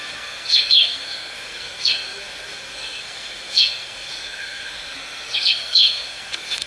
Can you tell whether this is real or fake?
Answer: fake